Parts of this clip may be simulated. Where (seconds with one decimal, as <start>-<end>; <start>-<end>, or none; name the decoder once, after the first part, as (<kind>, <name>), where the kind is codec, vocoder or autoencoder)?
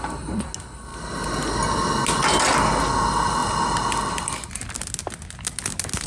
none